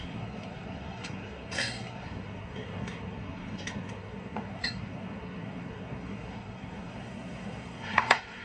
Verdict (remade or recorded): remade